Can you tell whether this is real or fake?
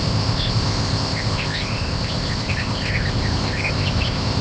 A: fake